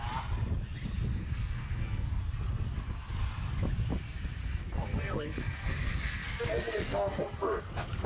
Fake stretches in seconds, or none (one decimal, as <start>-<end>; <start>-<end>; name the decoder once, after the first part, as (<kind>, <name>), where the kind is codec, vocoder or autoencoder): 1.1-2.2 (codec, SNAC); 4.4-7.6